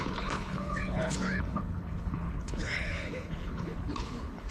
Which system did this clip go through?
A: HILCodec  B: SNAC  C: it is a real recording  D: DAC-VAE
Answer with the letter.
A